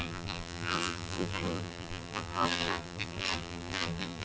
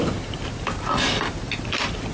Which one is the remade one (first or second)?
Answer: first